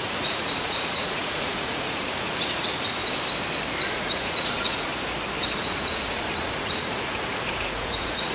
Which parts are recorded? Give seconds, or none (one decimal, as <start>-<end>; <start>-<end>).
3.0-3.9; 4.9-5.6